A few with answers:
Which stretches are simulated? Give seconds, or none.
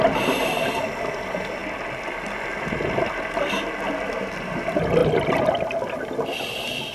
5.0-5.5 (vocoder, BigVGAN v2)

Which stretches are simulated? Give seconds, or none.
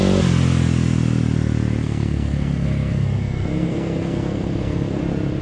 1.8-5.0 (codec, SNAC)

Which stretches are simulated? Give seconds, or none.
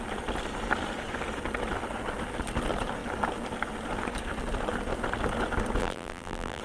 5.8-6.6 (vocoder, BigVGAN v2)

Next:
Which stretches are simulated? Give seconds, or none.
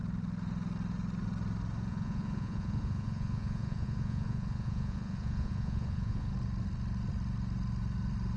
1.9-6.3 (vocoder, Vocos)